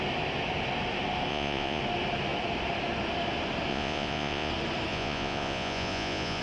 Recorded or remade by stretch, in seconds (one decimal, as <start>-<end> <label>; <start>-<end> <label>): 0.0-1.3 recorded; 1.3-1.8 remade; 1.8-3.7 recorded; 3.7-4.5 remade; 4.5-4.9 recorded; 4.9-6.4 remade